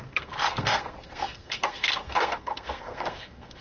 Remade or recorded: remade